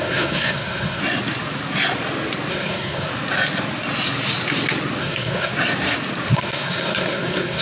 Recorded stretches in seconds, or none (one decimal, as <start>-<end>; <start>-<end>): 1.0-2.5; 3.1-5.0; 5.5-6.3